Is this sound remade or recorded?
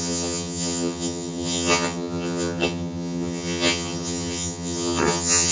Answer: remade